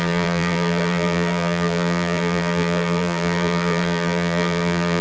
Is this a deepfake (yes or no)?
yes